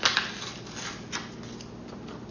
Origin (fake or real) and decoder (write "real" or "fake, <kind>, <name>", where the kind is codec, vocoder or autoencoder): real